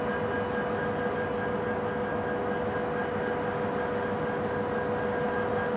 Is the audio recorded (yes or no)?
yes